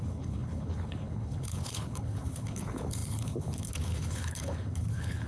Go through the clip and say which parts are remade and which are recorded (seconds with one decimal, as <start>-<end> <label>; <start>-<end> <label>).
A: 0.0-5.3 remade